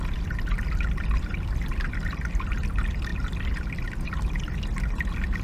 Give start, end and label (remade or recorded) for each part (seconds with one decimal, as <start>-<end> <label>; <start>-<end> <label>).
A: 0.0-5.4 recorded